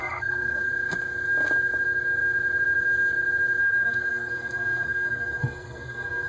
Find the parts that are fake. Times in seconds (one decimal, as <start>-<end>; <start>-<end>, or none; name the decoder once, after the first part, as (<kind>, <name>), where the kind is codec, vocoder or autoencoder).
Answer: 0.0-0.7 (codec, SNAC); 3.6-6.3